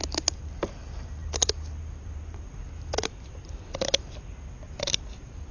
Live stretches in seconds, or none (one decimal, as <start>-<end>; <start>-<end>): 0.0-5.5